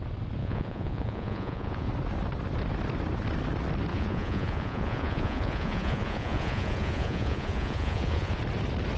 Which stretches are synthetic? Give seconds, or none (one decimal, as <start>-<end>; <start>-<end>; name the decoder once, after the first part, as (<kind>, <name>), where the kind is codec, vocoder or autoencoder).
0.4-1.9 (vocoder, Vocos); 3.9-8.4